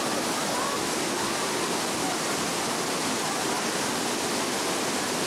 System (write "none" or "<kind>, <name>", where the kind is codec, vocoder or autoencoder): none